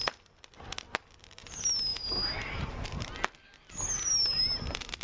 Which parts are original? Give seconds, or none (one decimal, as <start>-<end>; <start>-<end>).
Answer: 0.0-5.0